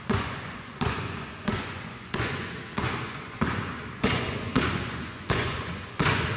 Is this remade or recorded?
remade